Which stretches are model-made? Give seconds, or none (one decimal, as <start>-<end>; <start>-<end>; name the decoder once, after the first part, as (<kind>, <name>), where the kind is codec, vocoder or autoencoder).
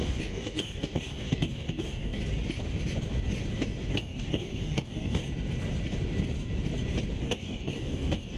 0.0-2.2 (codec, DAC); 3.9-5.2; 7.2-8.4